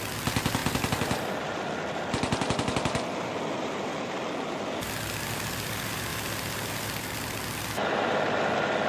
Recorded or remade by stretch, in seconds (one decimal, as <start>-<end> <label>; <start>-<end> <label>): 0.0-0.6 recorded; 0.6-4.0 remade; 4.0-8.9 recorded